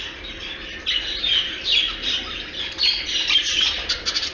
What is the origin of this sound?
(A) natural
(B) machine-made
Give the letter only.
A